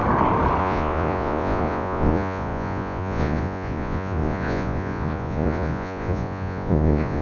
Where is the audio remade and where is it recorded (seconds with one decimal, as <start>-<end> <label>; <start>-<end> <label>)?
0.0-0.6 recorded; 0.6-7.2 remade